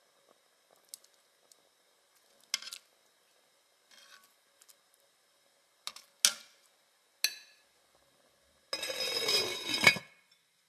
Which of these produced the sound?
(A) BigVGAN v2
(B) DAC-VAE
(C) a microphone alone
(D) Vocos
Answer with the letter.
C